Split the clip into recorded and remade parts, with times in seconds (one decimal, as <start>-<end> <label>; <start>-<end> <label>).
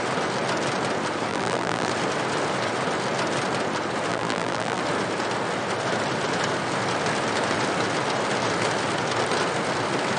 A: 0.0-1.3 recorded; 1.3-1.9 remade; 1.9-4.1 recorded; 4.1-4.8 remade; 4.8-10.2 recorded